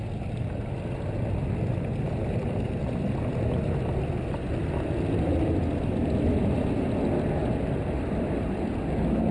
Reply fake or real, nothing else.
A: real